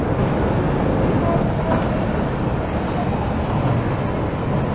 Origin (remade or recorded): recorded